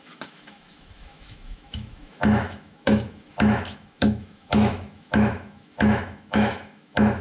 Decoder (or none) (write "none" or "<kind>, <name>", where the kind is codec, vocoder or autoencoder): autoencoder, DAC-VAE